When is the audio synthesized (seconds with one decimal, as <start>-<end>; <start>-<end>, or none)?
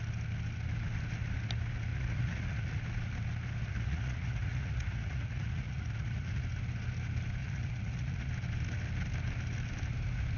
1.9-2.8; 3.6-6.4; 7.4-8.3